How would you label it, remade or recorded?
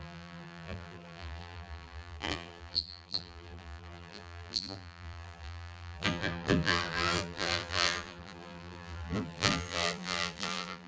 remade